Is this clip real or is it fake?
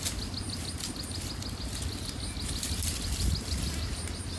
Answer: real